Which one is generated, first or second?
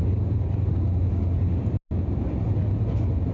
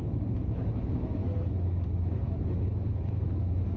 second